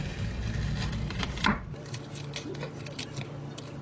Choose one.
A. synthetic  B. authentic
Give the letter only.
B